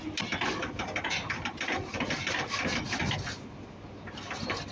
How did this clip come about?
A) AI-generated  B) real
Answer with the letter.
B